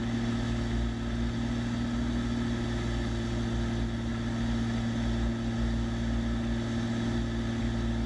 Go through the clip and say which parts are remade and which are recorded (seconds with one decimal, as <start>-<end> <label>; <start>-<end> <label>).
0.0-8.1 recorded